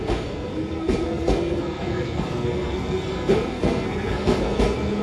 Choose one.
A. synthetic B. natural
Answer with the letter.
A